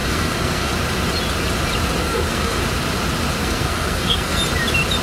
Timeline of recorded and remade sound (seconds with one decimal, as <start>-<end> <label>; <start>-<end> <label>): 0.0-0.7 remade; 0.7-2.0 recorded; 2.0-2.6 remade; 2.6-3.4 recorded; 3.4-4.4 remade; 4.4-5.0 recorded